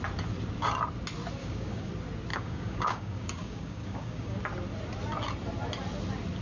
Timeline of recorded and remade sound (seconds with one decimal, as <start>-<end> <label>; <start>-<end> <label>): 0.0-1.4 recorded; 1.4-1.9 remade; 1.9-2.3 recorded; 2.3-4.4 remade; 4.4-6.4 recorded